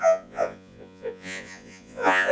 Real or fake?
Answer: fake